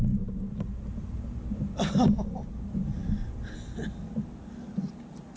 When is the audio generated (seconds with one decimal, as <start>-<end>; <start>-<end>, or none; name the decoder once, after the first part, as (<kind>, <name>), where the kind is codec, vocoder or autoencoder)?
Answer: none